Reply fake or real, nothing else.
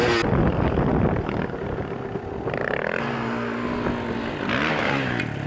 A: real